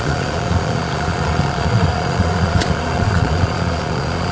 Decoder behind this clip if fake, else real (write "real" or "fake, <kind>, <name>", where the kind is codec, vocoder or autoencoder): fake, vocoder, Vocos